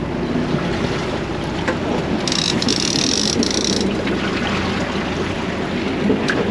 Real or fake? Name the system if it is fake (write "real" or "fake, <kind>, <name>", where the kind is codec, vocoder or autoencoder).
real